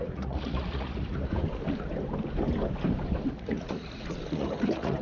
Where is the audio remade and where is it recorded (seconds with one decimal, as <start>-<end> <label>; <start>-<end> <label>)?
0.0-1.4 remade; 1.4-3.3 recorded; 3.3-5.0 remade